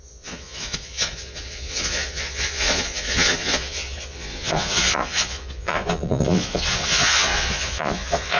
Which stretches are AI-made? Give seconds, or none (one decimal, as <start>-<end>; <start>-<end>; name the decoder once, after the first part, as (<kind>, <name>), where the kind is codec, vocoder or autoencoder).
0.0-8.4 (vocoder, Vocos)